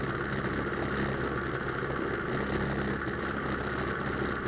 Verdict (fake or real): real